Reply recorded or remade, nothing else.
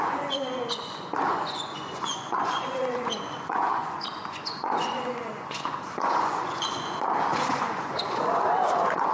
remade